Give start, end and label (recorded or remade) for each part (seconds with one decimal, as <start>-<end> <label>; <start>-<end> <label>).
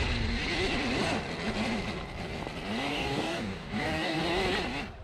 0.0-2.9 recorded; 2.9-4.2 remade; 4.2-5.0 recorded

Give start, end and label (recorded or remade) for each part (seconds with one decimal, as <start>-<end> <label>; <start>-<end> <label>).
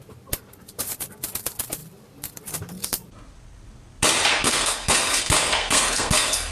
0.0-4.3 recorded; 4.3-6.5 remade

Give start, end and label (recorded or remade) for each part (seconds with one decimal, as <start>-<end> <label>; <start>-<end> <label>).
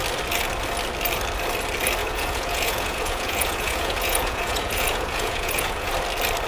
0.0-2.0 recorded; 2.0-5.9 remade; 5.9-6.5 recorded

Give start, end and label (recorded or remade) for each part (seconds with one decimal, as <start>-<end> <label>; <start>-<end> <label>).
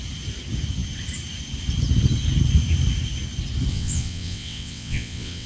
0.0-3.7 recorded; 3.7-5.5 remade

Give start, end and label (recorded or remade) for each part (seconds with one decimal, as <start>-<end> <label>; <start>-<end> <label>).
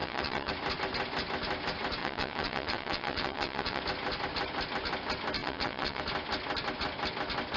0.0-0.5 remade; 0.5-2.0 recorded; 2.0-3.8 remade; 3.8-5.4 recorded; 5.4-6.0 remade; 6.0-7.6 recorded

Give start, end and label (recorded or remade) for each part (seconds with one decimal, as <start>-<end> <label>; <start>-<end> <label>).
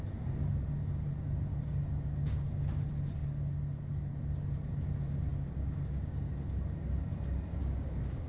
0.0-1.5 recorded; 1.5-2.8 remade; 2.8-5.3 recorded; 5.3-6.3 remade; 6.3-7.6 recorded; 7.6-8.3 remade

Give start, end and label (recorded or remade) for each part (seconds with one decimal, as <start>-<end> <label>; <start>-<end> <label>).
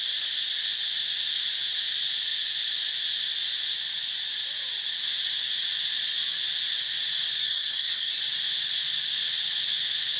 0.0-7.4 recorded; 7.4-8.2 remade; 8.2-10.2 recorded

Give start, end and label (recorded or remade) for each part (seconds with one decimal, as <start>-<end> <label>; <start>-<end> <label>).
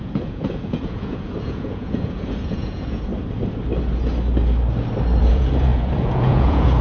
0.0-3.1 remade; 3.1-5.2 recorded; 5.2-6.8 remade